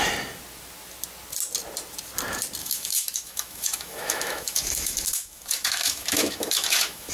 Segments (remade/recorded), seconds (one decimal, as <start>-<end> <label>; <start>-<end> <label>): 0.0-2.6 recorded; 2.6-7.1 remade